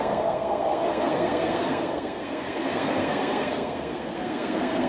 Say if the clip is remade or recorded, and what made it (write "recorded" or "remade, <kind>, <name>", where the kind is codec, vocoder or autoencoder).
remade, codec, SNAC